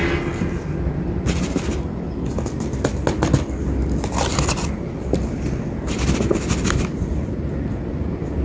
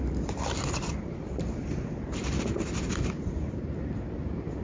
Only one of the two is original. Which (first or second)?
first